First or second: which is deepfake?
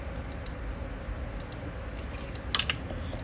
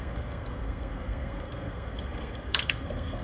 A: second